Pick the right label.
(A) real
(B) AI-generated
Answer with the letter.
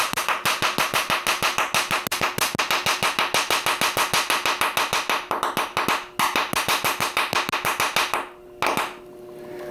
A